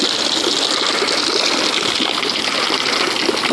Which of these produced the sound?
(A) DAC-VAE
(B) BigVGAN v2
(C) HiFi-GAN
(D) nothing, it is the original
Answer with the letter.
D